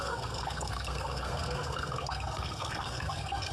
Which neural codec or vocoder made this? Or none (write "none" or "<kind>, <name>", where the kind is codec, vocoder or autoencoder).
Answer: codec, SNAC